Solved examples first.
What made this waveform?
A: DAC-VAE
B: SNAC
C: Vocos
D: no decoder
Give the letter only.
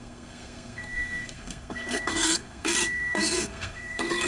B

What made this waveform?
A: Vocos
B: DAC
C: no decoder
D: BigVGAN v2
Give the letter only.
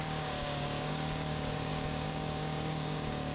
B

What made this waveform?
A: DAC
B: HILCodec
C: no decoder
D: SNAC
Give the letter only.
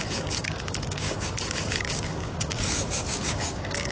A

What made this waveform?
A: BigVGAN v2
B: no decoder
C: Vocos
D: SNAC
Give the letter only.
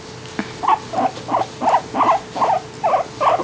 B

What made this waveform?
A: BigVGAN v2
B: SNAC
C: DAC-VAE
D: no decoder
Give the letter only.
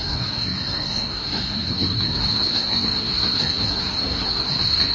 B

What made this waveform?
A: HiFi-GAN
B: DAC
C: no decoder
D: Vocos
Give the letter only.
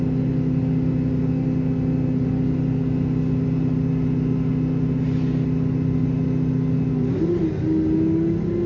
C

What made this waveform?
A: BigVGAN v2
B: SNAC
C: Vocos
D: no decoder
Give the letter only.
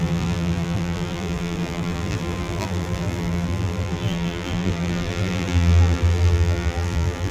A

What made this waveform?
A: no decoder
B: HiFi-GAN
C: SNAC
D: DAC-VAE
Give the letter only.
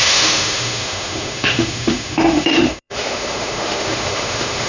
D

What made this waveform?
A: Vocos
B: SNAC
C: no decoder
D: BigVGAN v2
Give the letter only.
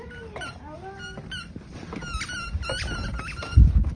C